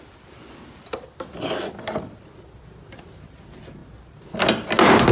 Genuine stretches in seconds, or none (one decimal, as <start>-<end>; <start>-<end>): 0.0-5.1